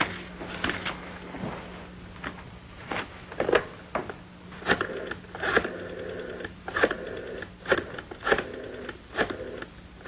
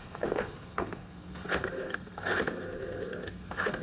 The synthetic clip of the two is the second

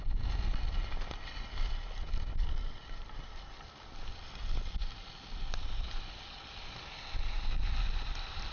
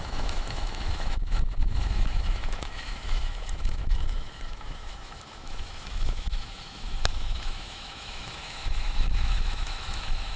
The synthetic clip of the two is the second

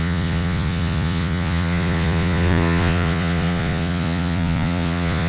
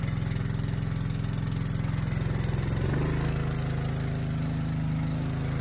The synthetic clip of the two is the first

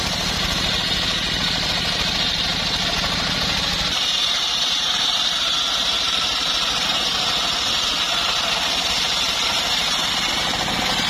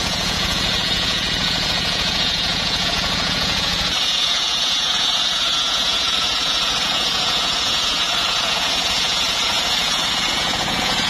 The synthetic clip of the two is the second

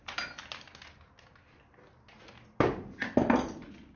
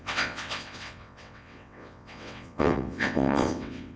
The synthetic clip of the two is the second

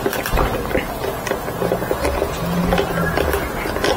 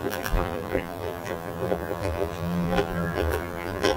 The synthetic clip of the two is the second